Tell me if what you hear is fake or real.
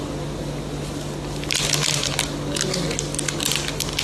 real